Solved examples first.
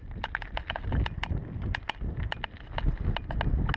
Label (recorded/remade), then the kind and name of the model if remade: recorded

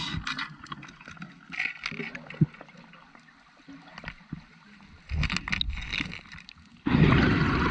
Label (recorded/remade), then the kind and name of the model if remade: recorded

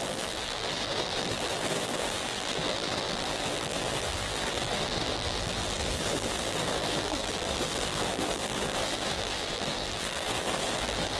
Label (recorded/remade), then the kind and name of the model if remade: remade, vocoder, BigVGAN v2